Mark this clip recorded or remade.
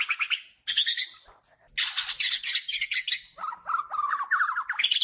recorded